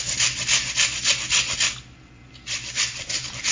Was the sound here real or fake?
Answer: real